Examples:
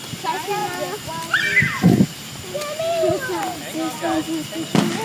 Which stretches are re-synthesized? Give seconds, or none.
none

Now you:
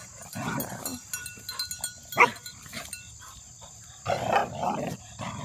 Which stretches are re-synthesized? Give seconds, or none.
none

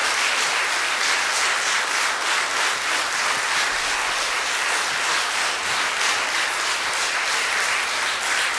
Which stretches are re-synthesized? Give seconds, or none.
none